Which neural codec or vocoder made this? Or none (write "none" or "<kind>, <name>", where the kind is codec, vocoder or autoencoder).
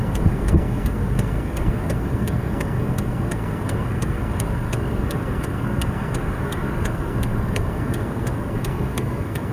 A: codec, SNAC